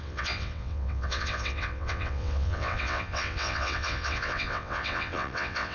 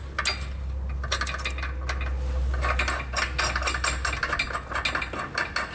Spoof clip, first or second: first